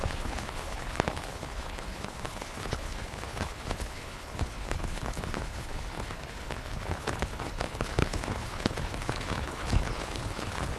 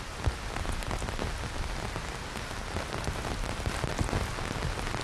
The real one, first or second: second